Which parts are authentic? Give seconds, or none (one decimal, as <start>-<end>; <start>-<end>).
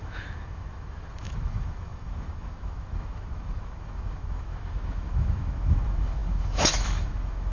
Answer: none